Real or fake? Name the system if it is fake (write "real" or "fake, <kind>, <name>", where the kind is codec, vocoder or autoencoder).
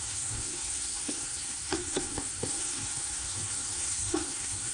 fake, codec, SNAC